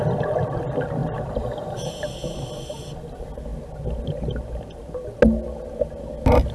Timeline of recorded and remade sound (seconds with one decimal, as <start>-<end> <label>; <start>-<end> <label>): 0.0-1.0 recorded; 1.0-1.8 remade; 1.8-6.5 recorded